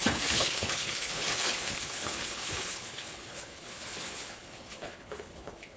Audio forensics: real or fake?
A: fake